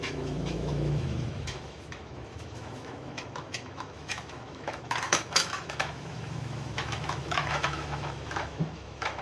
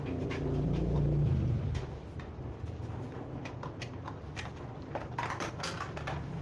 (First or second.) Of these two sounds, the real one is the second